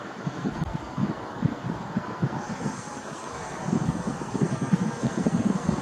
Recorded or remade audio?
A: remade